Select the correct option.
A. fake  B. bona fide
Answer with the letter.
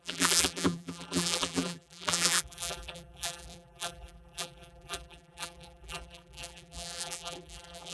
A